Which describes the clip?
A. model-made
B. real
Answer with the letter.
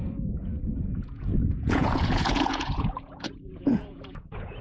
A